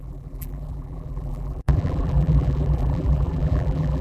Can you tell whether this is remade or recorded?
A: remade